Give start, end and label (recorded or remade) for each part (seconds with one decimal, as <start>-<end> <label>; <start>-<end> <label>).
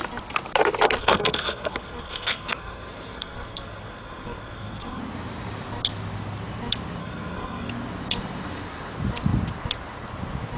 0.0-1.0 recorded; 1.0-5.0 remade; 5.0-7.0 recorded; 7.0-7.7 remade; 7.7-10.6 recorded